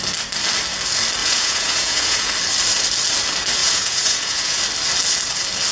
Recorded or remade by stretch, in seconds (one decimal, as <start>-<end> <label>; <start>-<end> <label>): 0.0-1.2 recorded; 1.2-2.3 remade; 2.3-3.6 recorded; 3.6-4.6 remade; 4.6-5.7 recorded